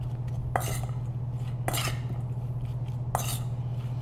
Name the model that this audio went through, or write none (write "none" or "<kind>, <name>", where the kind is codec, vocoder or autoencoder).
none